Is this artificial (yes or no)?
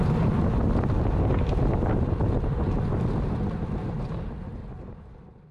no